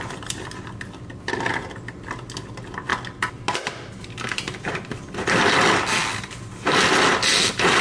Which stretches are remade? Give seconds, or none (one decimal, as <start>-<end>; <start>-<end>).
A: none